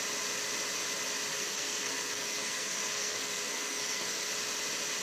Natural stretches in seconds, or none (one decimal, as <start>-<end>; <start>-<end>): 0.0-1.3; 4.3-5.0